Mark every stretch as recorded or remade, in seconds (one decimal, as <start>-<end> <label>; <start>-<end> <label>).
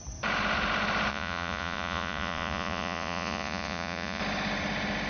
0.0-1.1 recorded; 1.1-4.2 remade; 4.2-5.1 recorded